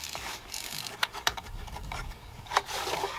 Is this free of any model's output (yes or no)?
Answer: no